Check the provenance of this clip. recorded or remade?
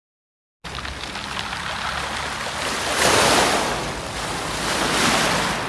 recorded